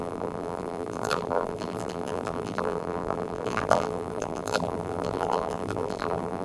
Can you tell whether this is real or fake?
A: fake